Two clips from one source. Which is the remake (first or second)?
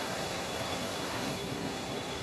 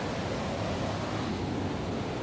first